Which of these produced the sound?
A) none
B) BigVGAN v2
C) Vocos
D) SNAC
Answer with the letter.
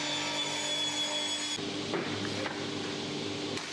A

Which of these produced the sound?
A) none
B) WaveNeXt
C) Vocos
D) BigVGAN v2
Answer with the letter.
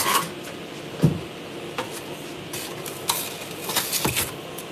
A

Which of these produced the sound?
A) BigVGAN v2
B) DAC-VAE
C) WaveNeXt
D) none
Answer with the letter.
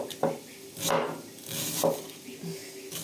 D